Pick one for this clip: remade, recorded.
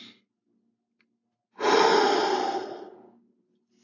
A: recorded